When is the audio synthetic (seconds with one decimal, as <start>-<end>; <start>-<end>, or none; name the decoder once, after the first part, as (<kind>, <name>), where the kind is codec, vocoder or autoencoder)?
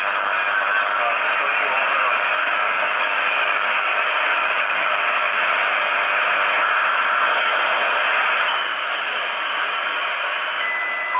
2.4-5.5 (codec, DAC); 8.5-10.4